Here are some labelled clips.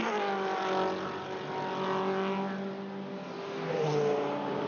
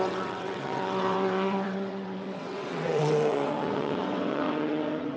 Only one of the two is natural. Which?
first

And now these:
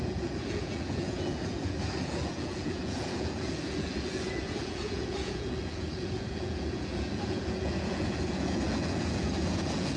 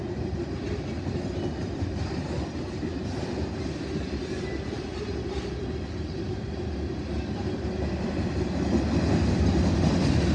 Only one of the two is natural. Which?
second